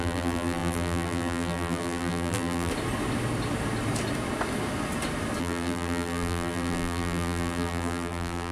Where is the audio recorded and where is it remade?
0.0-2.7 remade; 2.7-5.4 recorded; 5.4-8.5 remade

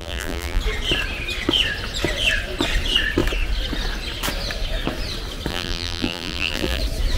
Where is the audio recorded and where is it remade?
0.0-0.6 remade; 0.6-5.5 recorded; 5.5-6.8 remade; 6.8-7.2 recorded